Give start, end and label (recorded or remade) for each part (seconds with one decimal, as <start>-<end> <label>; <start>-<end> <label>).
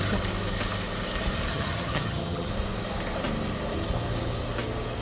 0.0-1.5 recorded; 1.5-2.5 remade; 2.5-5.0 recorded